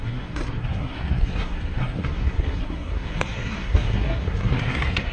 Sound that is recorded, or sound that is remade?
remade